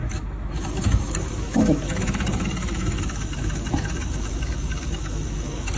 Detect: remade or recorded remade